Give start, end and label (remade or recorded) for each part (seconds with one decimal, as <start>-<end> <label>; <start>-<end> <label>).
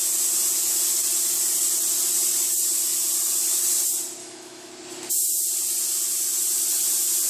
0.0-4.2 recorded; 4.2-4.7 remade; 4.7-7.3 recorded